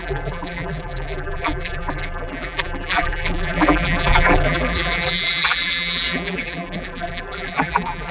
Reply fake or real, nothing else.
fake